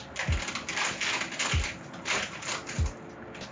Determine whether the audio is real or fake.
real